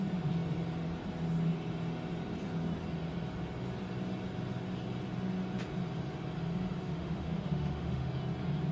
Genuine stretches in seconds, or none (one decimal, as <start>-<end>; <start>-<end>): 0.0-6.8; 8.1-8.7